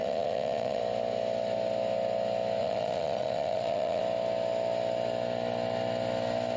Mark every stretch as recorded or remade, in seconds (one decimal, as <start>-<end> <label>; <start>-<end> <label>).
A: 0.0-0.8 remade; 0.8-2.6 recorded; 2.6-4.0 remade; 4.0-6.6 recorded